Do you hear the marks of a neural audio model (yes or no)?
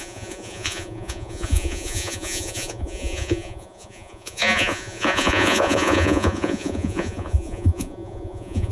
yes